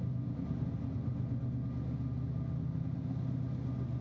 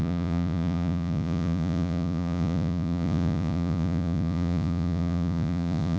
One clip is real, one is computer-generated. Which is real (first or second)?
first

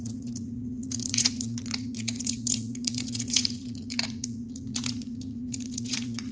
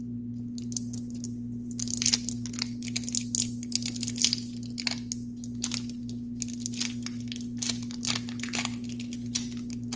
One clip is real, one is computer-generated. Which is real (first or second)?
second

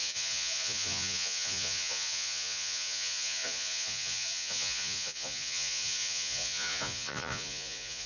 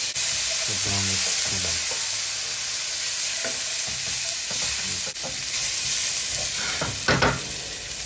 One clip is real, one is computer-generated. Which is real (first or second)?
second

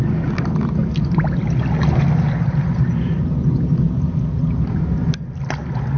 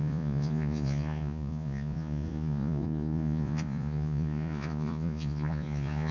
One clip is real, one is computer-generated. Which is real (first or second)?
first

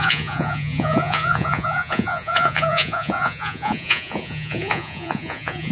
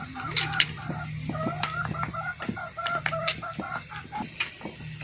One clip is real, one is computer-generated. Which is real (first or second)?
second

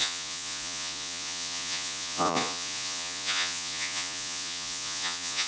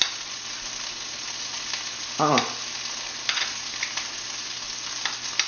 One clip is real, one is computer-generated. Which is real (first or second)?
second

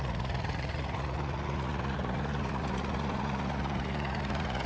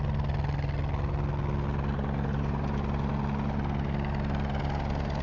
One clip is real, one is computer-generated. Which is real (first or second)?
second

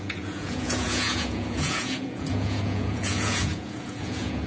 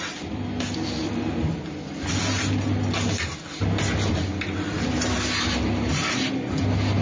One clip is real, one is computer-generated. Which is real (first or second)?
second